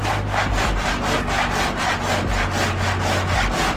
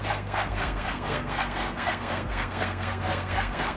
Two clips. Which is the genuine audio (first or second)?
first